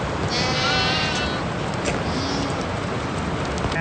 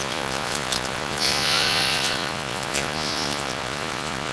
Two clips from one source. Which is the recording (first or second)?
first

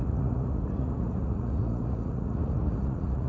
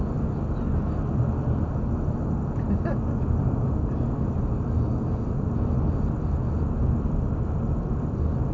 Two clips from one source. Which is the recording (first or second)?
second